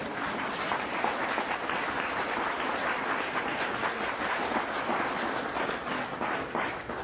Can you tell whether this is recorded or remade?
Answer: recorded